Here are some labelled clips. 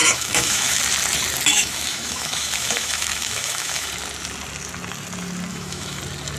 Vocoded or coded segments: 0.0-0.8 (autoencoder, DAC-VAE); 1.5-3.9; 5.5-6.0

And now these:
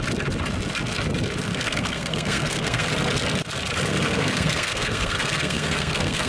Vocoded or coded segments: 1.5-2.9 (codec, SNAC); 3.9-6.3

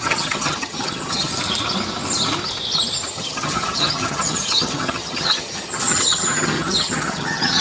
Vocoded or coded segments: 0.0-1.3 (vocoder, HiFi-GAN); 3.1-7.6

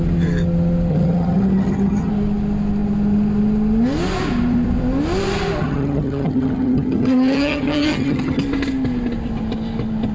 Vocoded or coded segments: 0.9-2.1 (vocoder, HiFi-GAN); 5.6-8.4

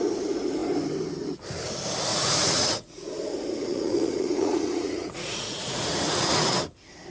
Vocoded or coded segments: 2.1-3.1 (vocoder, Vocos); 3.6-6.5